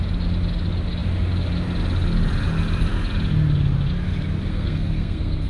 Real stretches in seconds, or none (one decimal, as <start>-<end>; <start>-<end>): 0.0-4.5